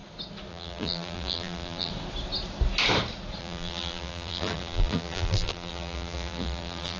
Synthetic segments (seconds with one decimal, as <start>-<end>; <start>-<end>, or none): 0.5-1.9; 3.4-7.0